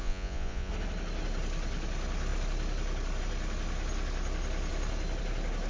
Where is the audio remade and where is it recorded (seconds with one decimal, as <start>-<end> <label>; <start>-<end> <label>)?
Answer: 0.0-0.7 remade; 0.7-5.7 recorded